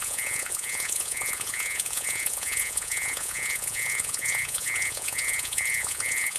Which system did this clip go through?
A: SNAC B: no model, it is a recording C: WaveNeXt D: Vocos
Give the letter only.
D